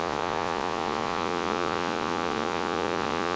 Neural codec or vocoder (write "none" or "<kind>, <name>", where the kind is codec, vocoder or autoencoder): vocoder, Vocos